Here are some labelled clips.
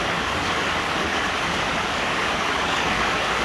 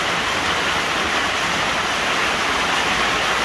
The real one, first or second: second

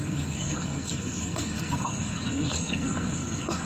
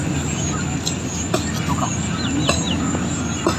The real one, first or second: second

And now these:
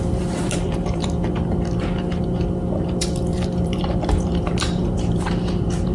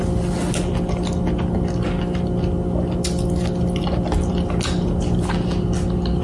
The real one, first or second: second